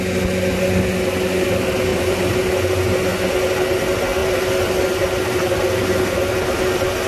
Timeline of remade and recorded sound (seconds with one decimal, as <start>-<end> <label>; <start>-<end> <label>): 0.0-1.9 recorded; 1.9-2.5 remade; 2.5-4.2 recorded; 4.2-4.7 remade; 4.7-7.1 recorded